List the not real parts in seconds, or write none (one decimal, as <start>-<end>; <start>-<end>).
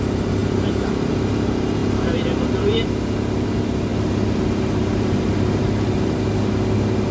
0.4-1.1; 1.8-2.8; 3.9-6.2